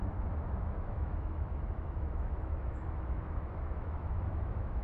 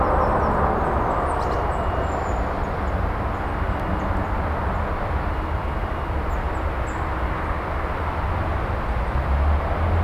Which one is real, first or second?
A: second